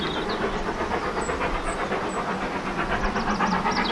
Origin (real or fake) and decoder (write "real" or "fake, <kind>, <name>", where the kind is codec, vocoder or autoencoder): real